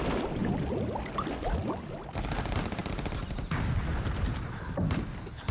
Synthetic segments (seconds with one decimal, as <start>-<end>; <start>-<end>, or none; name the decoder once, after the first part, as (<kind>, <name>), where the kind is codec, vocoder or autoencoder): 2.8-4.8 (vocoder, BigVGAN v2)